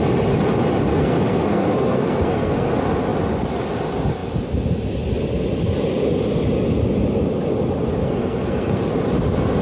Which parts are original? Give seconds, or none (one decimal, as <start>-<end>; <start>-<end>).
0.0-0.9; 2.7-8.0; 8.9-9.6